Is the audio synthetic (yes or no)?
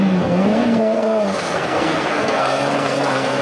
yes